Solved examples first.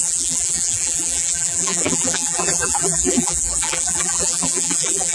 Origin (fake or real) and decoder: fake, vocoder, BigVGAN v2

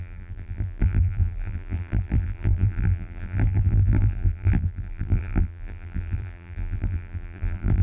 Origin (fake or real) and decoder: fake, vocoder, BigVGAN v2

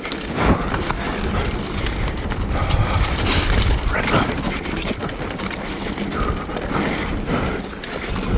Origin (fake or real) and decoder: fake, vocoder, BigVGAN v2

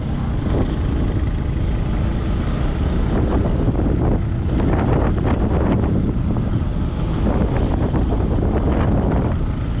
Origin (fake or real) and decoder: real